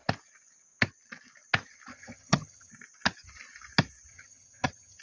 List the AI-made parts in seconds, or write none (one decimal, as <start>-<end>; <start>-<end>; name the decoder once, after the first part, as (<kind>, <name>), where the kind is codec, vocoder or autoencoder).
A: 1.9-2.7 (vocoder, HiFi-GAN); 4.1-5.0